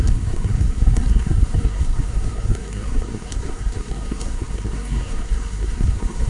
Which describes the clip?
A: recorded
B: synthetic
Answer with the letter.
B